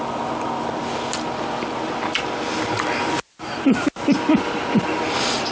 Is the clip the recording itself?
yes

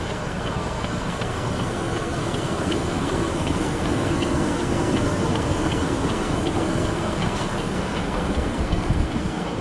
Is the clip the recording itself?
no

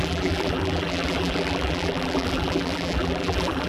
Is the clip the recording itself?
no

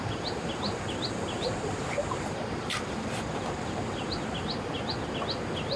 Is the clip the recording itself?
yes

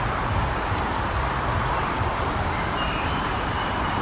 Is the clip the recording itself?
yes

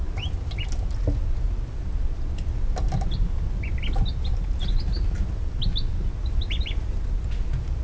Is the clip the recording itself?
yes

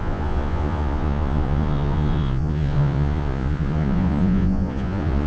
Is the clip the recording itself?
no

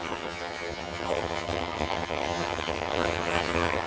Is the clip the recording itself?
no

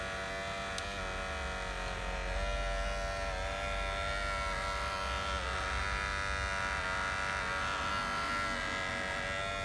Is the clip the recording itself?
yes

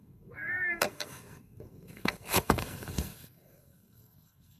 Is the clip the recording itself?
no